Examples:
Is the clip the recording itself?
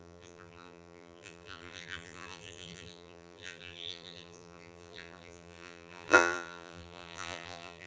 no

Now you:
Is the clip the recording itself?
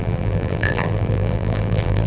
no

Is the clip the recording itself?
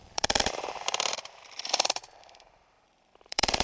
no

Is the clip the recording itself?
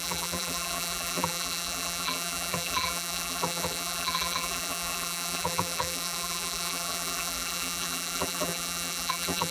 no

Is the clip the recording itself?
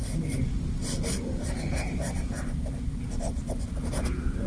yes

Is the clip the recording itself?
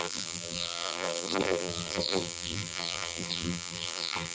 no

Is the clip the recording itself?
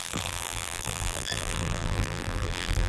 no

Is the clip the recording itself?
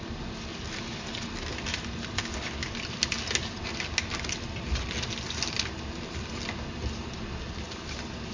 yes